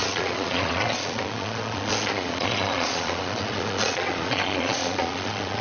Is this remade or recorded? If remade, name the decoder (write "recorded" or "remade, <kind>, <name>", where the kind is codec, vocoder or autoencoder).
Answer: remade, vocoder, Vocos